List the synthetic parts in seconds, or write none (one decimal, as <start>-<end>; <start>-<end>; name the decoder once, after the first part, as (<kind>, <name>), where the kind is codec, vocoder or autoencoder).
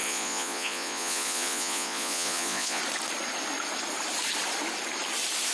0.0-2.8 (vocoder, Vocos)